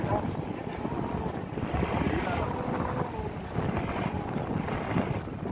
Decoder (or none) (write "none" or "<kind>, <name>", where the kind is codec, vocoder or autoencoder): none